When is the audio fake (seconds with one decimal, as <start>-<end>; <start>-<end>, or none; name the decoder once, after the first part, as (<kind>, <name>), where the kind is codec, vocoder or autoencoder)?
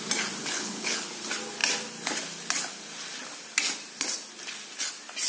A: 0.4-1.1 (codec, HILCodec)